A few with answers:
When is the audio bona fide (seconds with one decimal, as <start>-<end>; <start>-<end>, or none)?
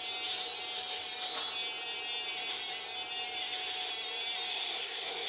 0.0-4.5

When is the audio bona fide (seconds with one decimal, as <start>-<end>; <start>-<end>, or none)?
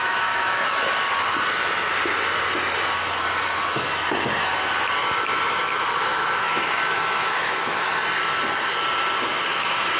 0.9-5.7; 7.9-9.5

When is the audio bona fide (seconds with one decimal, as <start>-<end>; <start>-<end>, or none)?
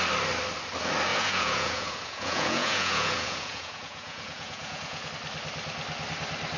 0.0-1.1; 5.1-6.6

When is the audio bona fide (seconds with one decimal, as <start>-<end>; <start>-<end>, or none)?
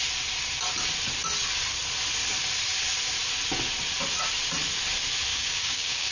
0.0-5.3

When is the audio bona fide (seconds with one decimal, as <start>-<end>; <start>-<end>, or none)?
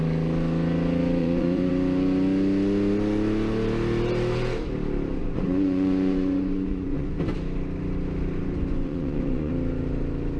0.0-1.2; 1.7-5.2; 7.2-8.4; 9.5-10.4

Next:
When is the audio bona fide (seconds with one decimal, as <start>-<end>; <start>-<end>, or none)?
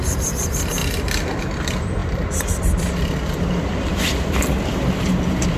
0.8-1.4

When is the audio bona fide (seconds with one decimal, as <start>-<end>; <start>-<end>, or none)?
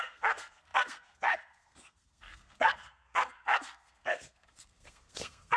none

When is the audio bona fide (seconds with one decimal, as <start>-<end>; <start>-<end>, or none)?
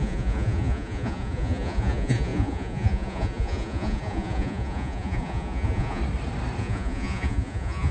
6.0-6.6